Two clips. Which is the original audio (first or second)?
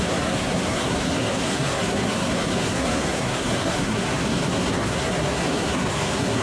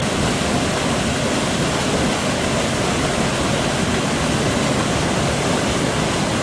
second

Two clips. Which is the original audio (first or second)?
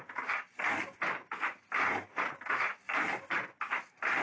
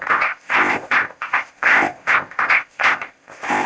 first